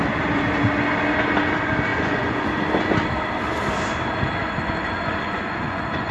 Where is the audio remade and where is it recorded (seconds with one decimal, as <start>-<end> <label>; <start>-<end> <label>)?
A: 0.0-1.9 recorded; 1.9-2.5 remade; 2.5-4.4 recorded; 4.4-6.1 remade